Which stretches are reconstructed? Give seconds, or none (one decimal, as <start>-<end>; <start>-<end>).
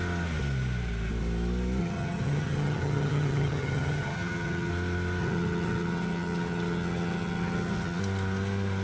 1.8-4.7; 5.2-8.0